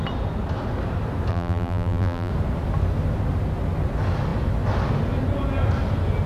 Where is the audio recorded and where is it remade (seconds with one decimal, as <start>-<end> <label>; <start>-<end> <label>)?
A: 0.0-1.3 recorded; 1.3-2.3 remade; 2.3-6.3 recorded